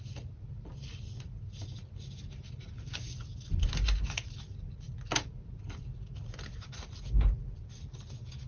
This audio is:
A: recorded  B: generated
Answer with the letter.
A